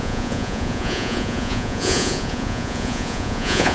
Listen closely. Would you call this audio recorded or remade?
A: remade